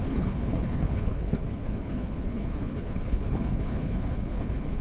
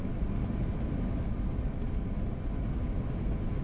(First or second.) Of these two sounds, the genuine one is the second